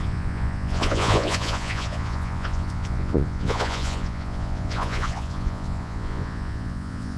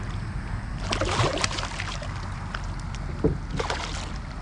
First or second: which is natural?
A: second